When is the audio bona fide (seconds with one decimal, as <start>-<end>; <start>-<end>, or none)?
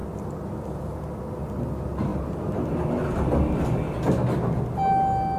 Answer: 0.0-5.4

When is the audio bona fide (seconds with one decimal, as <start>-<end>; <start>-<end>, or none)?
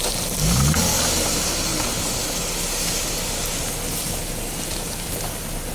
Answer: 0.0-5.7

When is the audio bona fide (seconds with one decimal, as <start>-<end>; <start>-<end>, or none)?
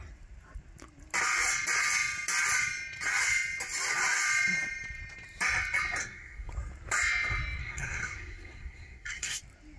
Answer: 0.0-6.0; 6.5-7.6; 9.4-9.8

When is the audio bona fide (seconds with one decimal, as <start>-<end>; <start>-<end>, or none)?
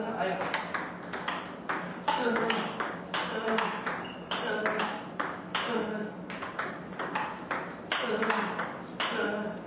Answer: 0.0-1.9; 3.0-9.7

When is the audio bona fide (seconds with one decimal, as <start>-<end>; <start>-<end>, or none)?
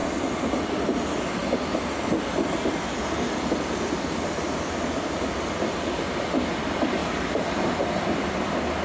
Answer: 0.0-8.8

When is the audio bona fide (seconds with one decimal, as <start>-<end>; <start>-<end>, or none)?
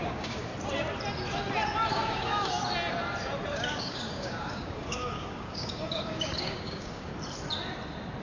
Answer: 0.5-1.9; 2.6-3.5; 7.1-8.2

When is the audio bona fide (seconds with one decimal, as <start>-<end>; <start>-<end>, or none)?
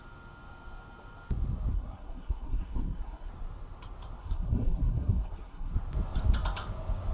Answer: 0.0-1.7; 3.3-4.2; 5.7-7.1